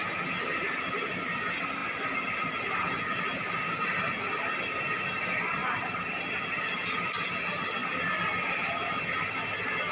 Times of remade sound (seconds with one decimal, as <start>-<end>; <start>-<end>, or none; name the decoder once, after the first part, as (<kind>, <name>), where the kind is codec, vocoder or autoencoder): none